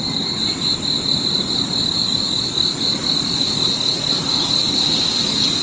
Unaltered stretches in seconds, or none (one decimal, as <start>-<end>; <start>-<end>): 0.0-5.6